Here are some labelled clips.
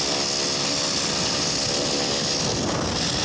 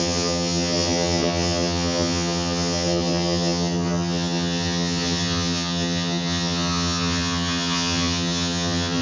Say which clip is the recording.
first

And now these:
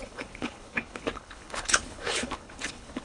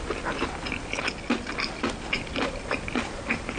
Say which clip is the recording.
second